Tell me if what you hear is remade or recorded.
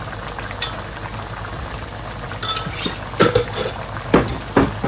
recorded